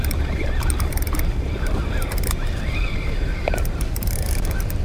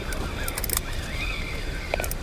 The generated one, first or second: first